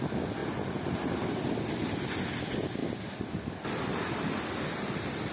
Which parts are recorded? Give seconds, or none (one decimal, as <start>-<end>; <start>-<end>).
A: 0.0-5.3